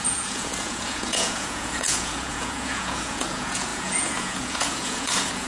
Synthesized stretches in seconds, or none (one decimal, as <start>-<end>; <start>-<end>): 0.0-5.5